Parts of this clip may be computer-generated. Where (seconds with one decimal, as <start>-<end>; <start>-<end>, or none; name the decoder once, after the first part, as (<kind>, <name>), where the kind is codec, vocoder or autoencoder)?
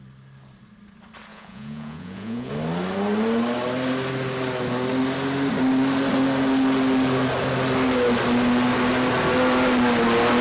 1.3-2.5 (vocoder, Vocos)